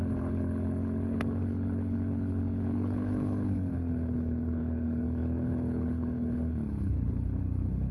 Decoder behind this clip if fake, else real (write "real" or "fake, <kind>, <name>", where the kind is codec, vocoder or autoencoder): fake, codec, HILCodec